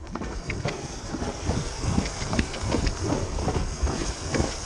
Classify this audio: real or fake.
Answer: fake